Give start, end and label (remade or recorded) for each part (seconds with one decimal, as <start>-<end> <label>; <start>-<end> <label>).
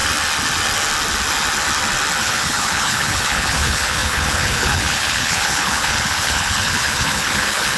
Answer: 0.0-2.2 recorded; 2.2-7.8 remade